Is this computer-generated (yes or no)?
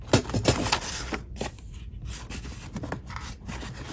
no